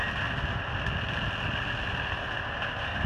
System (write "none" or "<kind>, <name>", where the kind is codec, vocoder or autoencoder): none